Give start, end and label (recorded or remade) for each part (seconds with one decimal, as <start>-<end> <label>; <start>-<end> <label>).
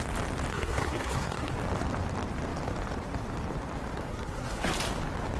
0.0-0.5 recorded; 0.5-1.5 remade; 1.5-4.1 recorded; 4.1-4.7 remade; 4.7-5.4 recorded